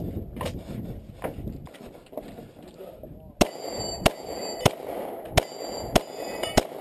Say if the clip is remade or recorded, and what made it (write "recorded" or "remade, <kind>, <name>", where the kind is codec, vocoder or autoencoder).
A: recorded